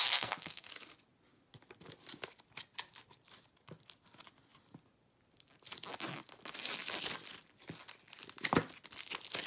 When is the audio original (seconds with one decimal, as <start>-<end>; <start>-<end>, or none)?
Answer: 0.7-9.5